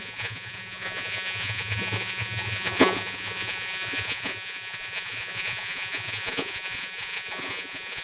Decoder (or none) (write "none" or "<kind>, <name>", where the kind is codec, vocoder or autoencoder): vocoder, Vocos